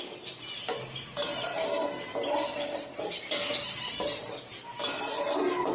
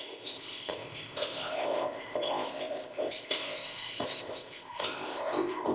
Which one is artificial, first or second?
second